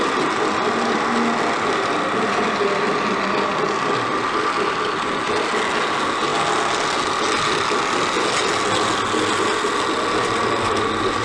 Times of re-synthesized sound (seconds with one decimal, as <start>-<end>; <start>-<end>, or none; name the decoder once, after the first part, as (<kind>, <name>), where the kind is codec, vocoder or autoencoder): none